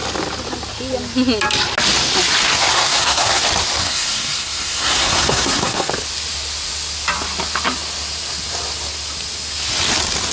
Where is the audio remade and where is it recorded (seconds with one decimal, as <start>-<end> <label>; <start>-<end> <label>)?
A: 0.0-2.7 recorded; 2.7-3.4 remade; 3.4-3.8 recorded; 3.8-5.9 remade; 5.9-10.3 recorded